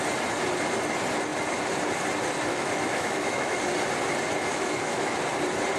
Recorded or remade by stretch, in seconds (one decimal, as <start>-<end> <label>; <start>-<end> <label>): 0.0-2.5 recorded; 2.5-3.6 remade; 3.6-4.5 recorded; 4.5-5.1 remade; 5.1-5.8 recorded